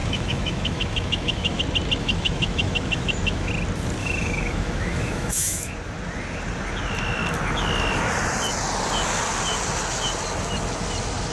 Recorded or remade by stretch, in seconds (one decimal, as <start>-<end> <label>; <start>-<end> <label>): 0.0-1.6 remade; 1.6-2.0 recorded; 2.0-3.5 remade; 3.5-4.0 recorded; 4.0-5.7 remade; 5.7-11.3 recorded